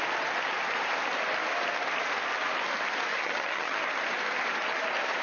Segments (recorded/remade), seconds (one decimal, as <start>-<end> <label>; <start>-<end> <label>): 0.0-3.1 recorded; 3.1-3.8 remade; 3.8-5.2 recorded